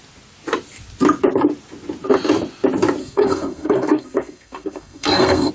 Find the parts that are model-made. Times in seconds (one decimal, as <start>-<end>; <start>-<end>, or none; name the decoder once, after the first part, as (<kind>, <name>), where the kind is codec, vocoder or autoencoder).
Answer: 3.0-5.5 (codec, SNAC)